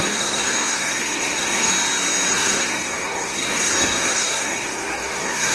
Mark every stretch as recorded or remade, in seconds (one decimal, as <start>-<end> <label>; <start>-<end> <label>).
0.0-1.7 remade; 1.7-2.3 recorded; 2.3-5.5 remade